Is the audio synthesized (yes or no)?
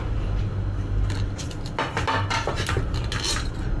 no